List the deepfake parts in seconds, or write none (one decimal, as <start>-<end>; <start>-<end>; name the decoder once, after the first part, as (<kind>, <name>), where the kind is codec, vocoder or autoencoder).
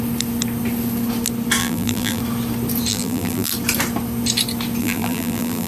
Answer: 1.6-2.2 (vocoder, BigVGAN v2); 2.9-3.5; 4.8-5.7